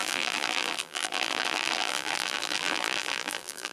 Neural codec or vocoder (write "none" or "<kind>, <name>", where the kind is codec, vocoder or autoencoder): vocoder, BigVGAN v2